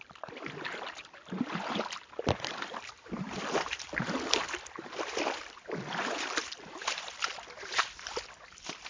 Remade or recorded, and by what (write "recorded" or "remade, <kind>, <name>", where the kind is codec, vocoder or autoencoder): remade, vocoder, BigVGAN v2